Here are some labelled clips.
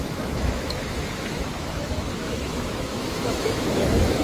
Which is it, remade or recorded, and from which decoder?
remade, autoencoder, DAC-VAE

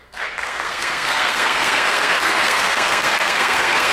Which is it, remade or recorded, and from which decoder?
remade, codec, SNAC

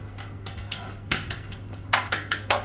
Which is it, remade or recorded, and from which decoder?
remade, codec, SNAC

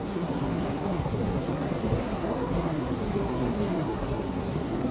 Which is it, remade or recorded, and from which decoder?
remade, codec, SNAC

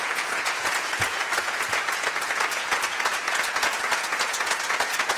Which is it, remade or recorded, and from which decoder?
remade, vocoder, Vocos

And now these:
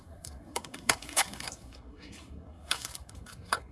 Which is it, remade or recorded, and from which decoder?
remade, codec, SNAC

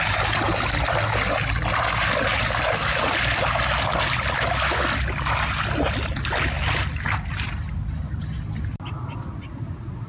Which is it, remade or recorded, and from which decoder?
recorded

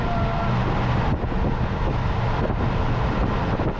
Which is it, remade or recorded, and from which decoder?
recorded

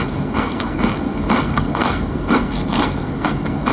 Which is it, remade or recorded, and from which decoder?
remade, codec, SNAC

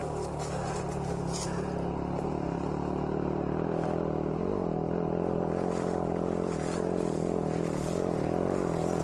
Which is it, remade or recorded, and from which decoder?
recorded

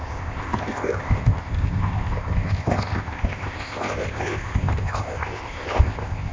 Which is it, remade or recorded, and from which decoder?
remade, codec, ZipCodec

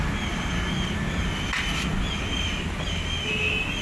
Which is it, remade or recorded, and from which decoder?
recorded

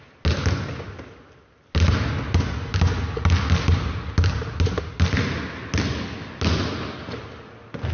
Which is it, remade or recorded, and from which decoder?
recorded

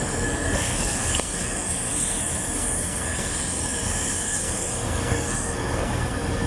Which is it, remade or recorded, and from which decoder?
remade, codec, SNAC